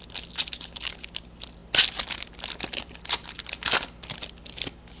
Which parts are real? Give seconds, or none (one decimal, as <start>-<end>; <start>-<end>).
0.0-5.0